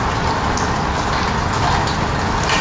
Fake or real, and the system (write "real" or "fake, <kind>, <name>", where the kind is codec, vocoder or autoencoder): real